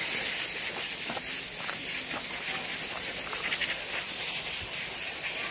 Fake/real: real